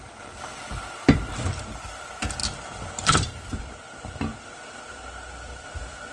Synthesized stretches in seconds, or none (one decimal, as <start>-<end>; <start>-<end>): 2.4-6.1